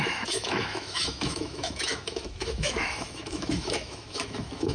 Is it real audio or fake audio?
fake